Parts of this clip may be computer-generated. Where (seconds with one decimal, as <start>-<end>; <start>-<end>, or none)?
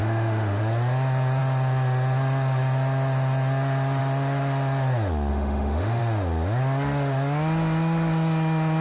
0.0-0.6; 5.3-6.0